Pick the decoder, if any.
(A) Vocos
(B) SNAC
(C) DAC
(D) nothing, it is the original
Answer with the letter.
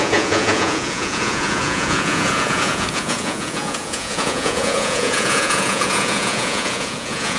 A